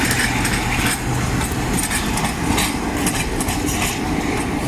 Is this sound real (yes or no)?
yes